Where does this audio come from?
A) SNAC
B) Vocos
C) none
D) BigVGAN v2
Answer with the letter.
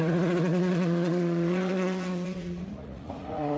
B